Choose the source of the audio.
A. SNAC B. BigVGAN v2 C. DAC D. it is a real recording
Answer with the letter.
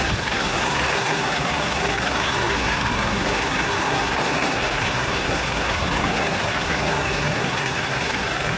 A